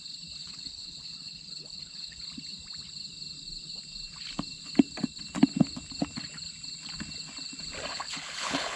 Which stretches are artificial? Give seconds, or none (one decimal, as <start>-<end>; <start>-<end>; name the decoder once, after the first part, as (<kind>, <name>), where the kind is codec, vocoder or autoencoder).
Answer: 0.4-2.2 (codec, HILCodec); 7.9-8.8